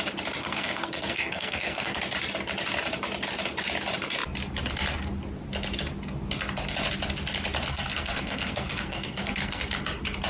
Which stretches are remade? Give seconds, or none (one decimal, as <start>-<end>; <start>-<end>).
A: 0.4-2.0; 7.7-9.6